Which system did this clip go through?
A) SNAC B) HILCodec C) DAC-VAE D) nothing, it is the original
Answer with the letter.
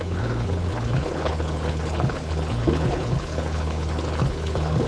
B